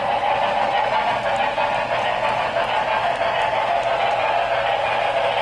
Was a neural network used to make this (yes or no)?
no